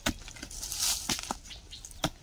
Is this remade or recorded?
recorded